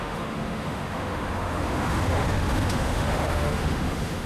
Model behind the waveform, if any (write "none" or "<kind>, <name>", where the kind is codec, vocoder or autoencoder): autoencoder, DAC-VAE